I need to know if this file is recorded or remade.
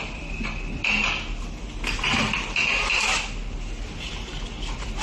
recorded